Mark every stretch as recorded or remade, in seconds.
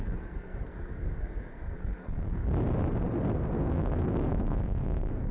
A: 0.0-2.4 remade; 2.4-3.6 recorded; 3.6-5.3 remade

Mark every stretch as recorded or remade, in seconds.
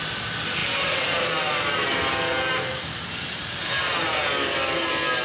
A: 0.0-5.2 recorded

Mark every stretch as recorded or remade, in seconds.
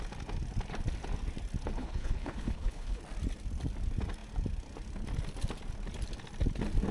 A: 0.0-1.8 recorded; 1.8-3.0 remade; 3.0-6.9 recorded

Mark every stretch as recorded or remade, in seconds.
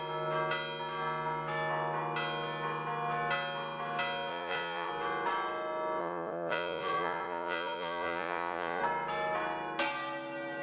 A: 0.0-4.3 recorded; 4.3-4.9 remade; 4.9-6.0 recorded; 6.0-8.8 remade; 8.8-10.6 recorded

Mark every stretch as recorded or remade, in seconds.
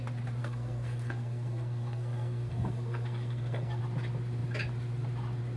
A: 0.0-0.4 recorded; 0.4-3.8 remade; 3.8-5.6 recorded